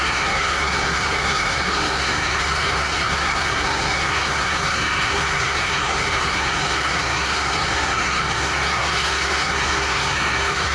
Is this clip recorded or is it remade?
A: remade